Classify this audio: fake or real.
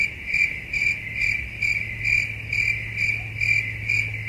real